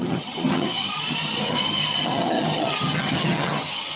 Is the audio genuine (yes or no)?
no